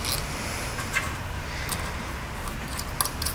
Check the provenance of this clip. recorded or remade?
recorded